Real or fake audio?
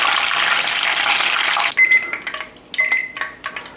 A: real